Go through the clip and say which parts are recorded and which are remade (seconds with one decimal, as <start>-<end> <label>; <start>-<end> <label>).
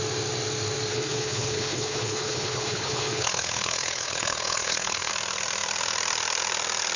0.0-0.9 recorded; 0.9-5.1 remade; 5.1-7.0 recorded